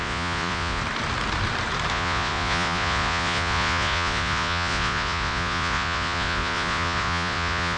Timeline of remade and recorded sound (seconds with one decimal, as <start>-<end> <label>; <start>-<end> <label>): 0.0-0.8 remade; 0.8-1.9 recorded; 1.9-7.8 remade